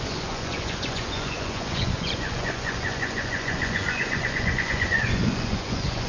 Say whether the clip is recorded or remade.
remade